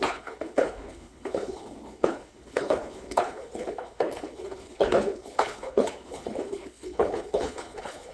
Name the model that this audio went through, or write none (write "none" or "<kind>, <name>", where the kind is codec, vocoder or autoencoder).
codec, HILCodec